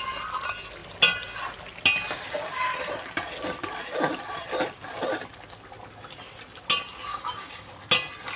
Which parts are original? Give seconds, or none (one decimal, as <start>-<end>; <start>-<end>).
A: 0.0-7.1; 7.7-8.4